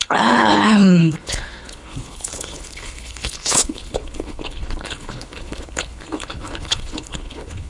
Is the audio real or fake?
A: fake